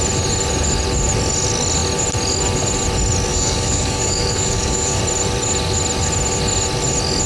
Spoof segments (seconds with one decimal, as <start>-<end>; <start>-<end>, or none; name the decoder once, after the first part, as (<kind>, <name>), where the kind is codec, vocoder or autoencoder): 3.3-5.0 (codec, DAC)